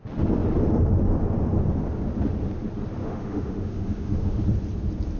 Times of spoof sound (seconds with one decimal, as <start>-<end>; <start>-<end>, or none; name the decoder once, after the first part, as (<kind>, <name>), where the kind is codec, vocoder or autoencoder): 3.0-4.4 (autoencoder, DAC-VAE)